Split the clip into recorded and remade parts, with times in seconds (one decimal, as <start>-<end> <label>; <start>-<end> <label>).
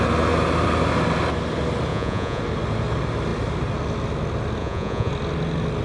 0.0-1.9 recorded; 1.9-2.4 remade; 2.4-4.6 recorded; 4.6-5.1 remade; 5.1-5.8 recorded